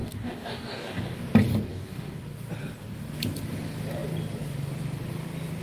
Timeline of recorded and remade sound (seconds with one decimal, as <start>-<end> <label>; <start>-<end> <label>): 0.0-1.2 remade; 1.2-1.7 recorded; 1.7-2.2 remade; 2.2-5.6 recorded